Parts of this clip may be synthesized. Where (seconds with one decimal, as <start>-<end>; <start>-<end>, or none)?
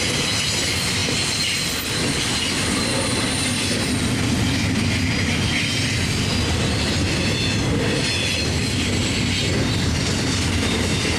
none